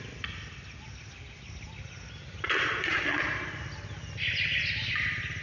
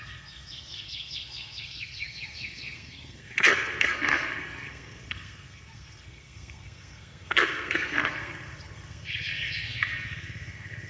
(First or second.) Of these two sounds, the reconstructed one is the second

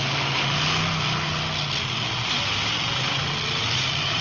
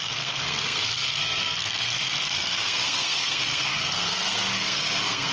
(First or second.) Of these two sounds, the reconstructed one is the second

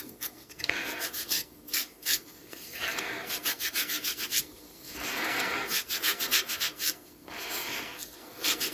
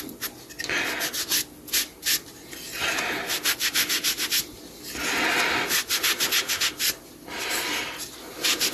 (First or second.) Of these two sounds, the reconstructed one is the first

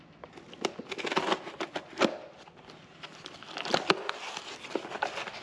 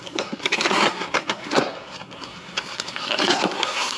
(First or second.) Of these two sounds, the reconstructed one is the second